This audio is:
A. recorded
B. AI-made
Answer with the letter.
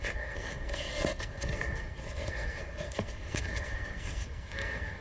B